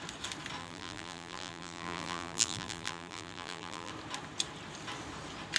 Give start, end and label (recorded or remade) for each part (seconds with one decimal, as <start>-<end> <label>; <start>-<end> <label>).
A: 0.0-0.6 recorded; 0.6-3.9 remade; 3.9-5.6 recorded